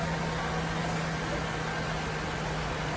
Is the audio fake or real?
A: real